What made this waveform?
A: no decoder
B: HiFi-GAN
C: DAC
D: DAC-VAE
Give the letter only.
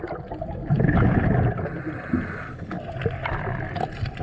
A